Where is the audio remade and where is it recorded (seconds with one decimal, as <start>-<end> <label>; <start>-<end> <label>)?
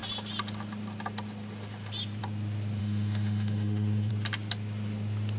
0.0-2.8 recorded; 2.8-4.1 remade; 4.1-5.4 recorded